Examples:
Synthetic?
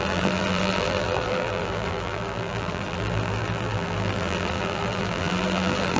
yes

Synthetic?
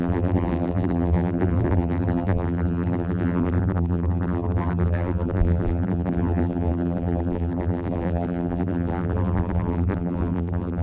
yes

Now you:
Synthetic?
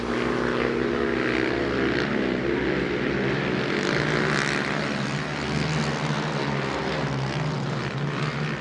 no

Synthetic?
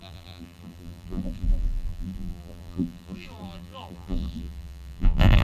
yes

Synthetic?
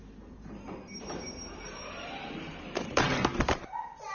yes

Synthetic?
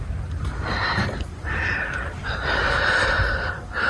yes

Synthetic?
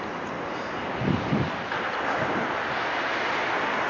no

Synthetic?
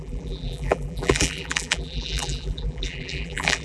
yes